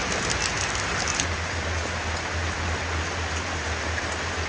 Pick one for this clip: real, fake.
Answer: real